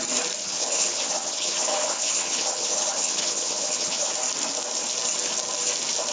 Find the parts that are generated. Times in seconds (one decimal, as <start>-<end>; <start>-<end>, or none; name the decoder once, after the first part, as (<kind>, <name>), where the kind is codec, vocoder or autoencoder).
0.4-4.1 (vocoder, HiFi-GAN)